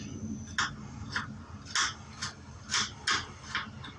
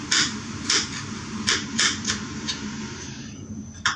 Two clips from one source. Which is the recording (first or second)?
first